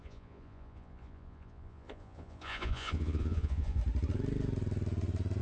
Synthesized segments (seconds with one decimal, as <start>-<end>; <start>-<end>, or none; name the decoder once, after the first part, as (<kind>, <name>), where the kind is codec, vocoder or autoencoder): 0.0-3.8 (vocoder, Vocos)